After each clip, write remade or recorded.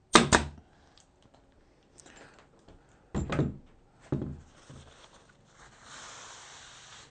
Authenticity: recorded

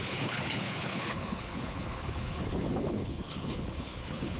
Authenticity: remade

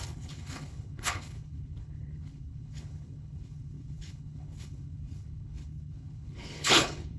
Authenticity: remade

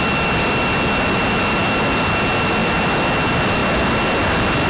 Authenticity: recorded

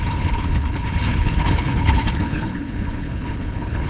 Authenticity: remade